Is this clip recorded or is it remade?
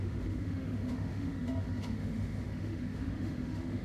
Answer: remade